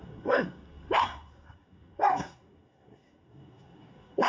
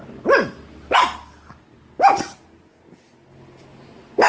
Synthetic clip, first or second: first